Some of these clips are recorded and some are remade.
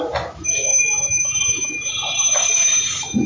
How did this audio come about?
recorded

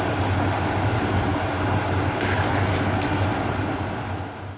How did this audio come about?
recorded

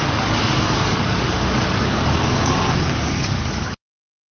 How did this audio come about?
remade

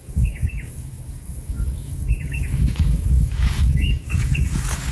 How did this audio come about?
remade